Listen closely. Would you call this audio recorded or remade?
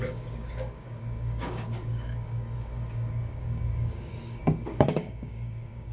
remade